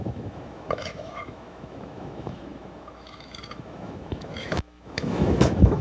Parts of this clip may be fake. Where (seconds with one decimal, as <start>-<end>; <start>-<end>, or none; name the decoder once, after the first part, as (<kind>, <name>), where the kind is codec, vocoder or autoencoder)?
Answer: 0.0-5.8 (autoencoder, DAC-VAE)